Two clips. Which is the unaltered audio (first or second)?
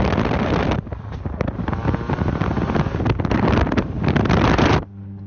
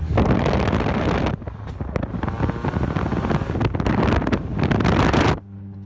second